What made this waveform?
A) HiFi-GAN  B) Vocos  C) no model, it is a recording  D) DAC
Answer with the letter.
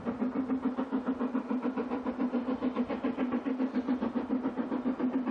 C